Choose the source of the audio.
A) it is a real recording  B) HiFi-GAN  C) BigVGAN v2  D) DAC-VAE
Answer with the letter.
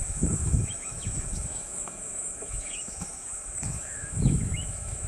D